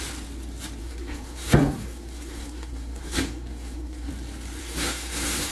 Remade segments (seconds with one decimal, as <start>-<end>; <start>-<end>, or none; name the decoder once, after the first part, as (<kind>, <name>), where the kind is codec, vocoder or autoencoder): 0.8-4.1 (codec, SNAC); 4.6-5.5